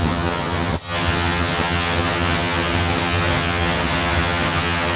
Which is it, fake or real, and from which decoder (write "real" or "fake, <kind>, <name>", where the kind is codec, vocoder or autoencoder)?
fake, vocoder, HiFi-GAN